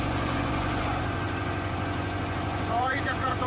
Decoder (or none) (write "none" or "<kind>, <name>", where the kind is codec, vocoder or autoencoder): vocoder, Vocos